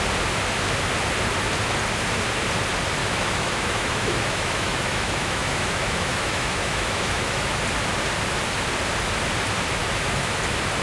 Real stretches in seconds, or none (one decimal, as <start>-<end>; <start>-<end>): 0.0-3.0; 7.6-9.8; 10.4-10.8